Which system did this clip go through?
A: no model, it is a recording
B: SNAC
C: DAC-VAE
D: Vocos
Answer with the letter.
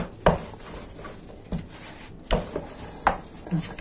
A